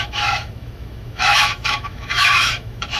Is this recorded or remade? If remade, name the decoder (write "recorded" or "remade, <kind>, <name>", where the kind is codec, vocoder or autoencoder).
remade, autoencoder, DAC-VAE